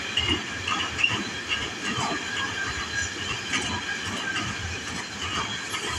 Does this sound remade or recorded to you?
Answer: remade